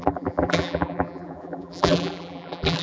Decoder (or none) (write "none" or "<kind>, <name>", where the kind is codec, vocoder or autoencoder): vocoder, BigVGAN v2